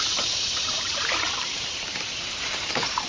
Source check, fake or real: fake